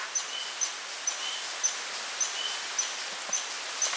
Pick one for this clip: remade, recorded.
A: recorded